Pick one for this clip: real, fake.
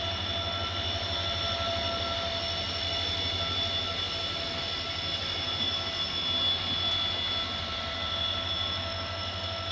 real